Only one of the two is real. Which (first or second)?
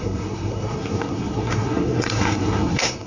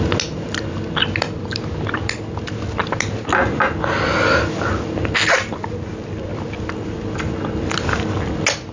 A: second